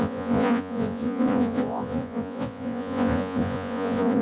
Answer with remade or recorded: remade